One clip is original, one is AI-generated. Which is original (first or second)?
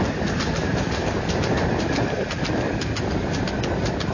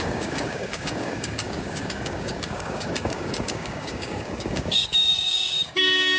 first